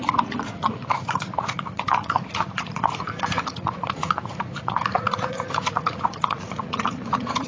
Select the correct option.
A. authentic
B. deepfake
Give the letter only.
B